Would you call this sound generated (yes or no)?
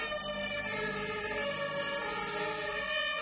no